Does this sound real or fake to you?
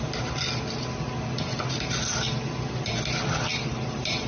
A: real